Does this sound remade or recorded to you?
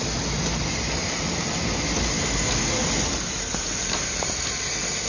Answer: recorded